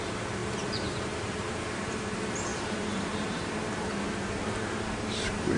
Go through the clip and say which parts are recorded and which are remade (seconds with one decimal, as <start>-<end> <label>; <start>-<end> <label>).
0.0-0.4 recorded; 0.4-2.0 remade; 2.0-2.5 recorded; 2.5-5.6 remade